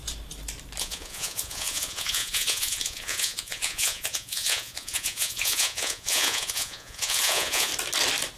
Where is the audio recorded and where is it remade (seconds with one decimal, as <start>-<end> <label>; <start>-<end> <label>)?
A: 0.0-0.8 recorded; 0.8-7.7 remade; 7.7-8.4 recorded